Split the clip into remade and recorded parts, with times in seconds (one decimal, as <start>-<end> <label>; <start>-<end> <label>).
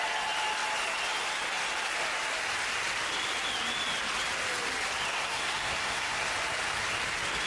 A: 0.0-5.1 recorded; 5.1-6.2 remade; 6.2-7.5 recorded